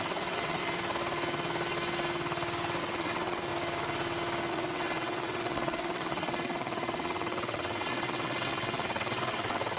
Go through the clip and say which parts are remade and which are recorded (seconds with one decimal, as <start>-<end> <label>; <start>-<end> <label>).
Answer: 0.0-0.6 remade; 0.6-2.8 recorded; 2.8-3.5 remade; 3.5-4.5 recorded; 4.5-9.8 remade